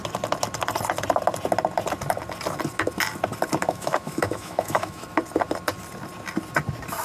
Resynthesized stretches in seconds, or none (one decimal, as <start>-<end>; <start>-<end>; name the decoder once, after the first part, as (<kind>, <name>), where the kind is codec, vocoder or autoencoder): 3.6-5.0 (autoencoder, DAC-VAE)